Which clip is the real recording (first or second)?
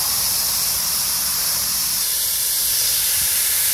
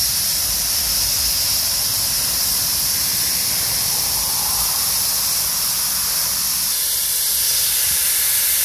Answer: second